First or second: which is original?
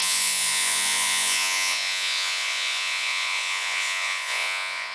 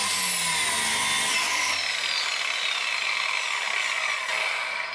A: second